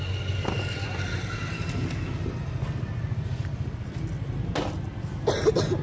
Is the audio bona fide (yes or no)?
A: yes